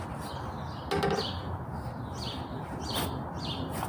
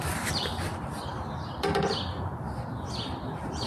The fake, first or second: second